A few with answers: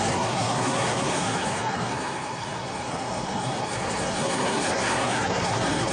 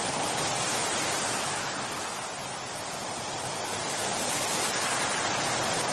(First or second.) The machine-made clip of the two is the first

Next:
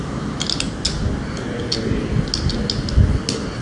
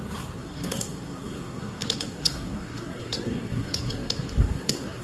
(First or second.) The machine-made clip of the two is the second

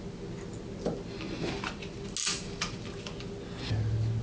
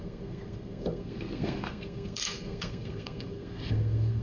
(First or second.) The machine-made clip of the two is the second